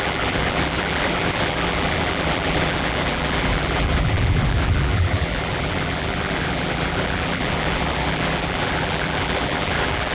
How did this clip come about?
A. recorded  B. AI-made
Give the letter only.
B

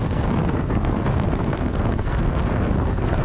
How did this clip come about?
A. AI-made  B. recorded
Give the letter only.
A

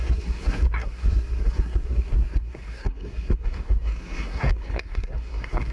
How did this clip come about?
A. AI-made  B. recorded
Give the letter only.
A